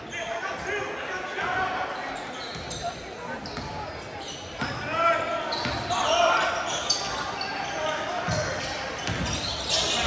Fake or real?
real